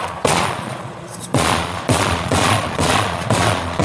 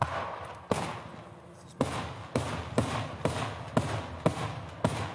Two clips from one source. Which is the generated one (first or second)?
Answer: first